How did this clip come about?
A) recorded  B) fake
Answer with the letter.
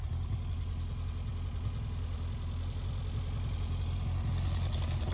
A